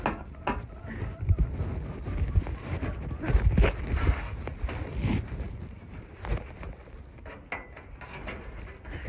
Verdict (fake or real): real